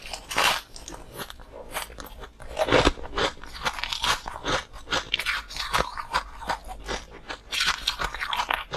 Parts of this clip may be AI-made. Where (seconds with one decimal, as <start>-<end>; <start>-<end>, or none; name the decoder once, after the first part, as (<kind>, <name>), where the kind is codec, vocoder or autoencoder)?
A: none